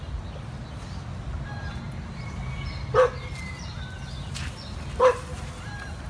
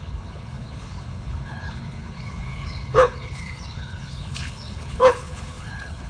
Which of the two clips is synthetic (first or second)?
second